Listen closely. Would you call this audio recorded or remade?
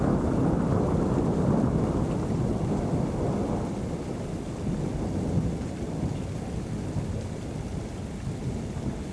recorded